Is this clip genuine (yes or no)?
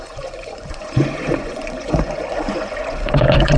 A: no